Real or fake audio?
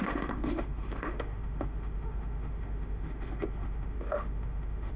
fake